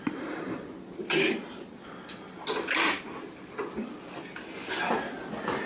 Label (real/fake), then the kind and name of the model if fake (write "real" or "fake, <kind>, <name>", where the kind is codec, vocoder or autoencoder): real